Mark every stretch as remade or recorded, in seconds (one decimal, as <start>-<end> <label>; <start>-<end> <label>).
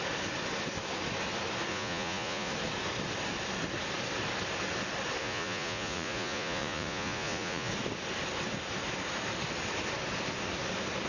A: 0.0-1.7 recorded; 1.7-2.5 remade; 2.5-5.2 recorded; 5.2-7.7 remade; 7.7-11.1 recorded